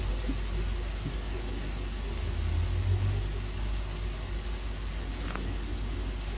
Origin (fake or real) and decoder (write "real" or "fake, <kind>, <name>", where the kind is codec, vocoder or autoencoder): real